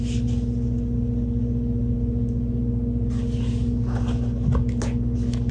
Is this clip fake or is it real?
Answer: real